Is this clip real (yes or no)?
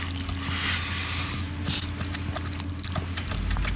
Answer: yes